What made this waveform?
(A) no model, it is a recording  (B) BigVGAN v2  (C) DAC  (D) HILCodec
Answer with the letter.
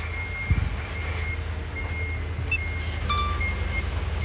A